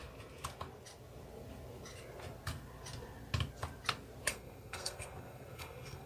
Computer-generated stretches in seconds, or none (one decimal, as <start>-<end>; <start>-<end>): 4.3-6.1